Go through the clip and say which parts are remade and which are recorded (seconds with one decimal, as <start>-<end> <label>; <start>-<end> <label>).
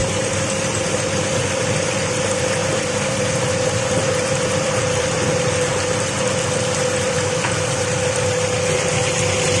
0.0-1.4 recorded; 1.4-2.6 remade; 2.6-3.5 recorded; 3.5-9.6 remade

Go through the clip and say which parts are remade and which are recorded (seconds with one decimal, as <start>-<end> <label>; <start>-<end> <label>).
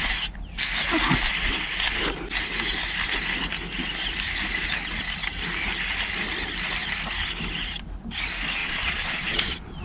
0.0-8.6 recorded; 8.6-9.8 remade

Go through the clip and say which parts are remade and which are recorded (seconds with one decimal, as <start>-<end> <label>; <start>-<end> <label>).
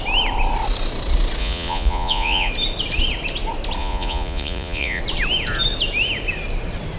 0.0-1.4 recorded; 1.4-2.5 remade; 2.5-3.8 recorded; 3.8-5.0 remade; 5.0-7.0 recorded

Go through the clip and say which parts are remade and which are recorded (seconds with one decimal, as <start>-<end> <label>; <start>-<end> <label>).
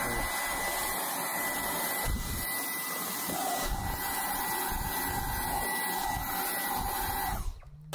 0.0-1.3 recorded; 1.3-4.4 remade; 4.4-7.9 recorded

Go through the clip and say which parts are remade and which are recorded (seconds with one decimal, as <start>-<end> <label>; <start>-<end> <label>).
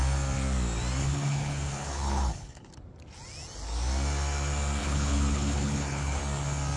0.0-1.0 recorded; 1.0-2.7 remade; 2.7-4.8 recorded; 4.8-6.2 remade; 6.2-6.8 recorded